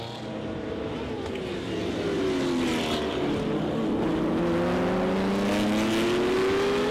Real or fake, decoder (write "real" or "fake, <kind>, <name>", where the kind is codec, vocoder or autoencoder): real